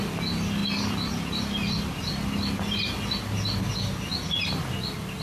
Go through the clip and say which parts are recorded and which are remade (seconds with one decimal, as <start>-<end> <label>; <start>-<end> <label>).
0.0-5.2 recorded